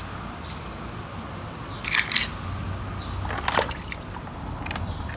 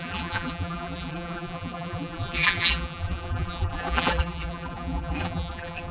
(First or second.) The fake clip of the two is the second